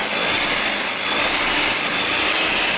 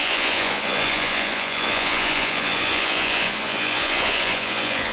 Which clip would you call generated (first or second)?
second